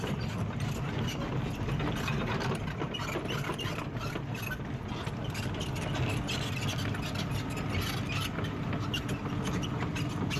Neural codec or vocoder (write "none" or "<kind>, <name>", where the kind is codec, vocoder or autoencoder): none